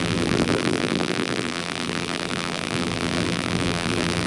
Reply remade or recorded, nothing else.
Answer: remade